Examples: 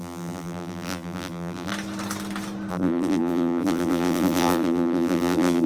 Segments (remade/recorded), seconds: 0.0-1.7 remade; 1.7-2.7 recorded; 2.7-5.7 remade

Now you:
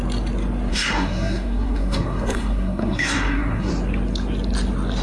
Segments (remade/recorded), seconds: 0.0-0.7 recorded; 0.7-3.7 remade; 3.7-5.0 recorded